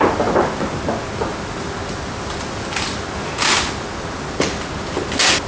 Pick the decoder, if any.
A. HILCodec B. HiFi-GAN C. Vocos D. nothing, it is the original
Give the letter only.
D